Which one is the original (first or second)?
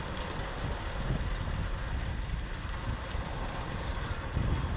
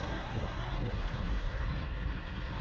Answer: first